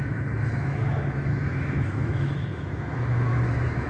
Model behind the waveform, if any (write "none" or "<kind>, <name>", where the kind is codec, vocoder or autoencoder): autoencoder, DAC-VAE